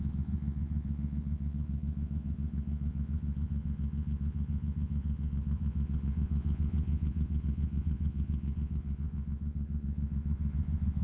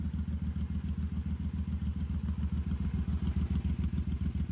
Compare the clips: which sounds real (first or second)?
second